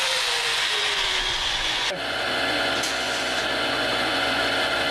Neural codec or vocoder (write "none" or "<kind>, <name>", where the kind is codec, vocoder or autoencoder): vocoder, Vocos